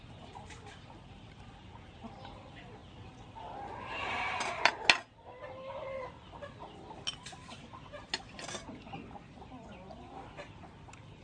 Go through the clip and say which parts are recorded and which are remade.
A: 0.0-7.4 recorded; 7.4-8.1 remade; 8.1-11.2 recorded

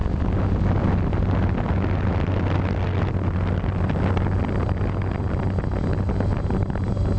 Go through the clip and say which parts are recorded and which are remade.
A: 0.0-7.2 recorded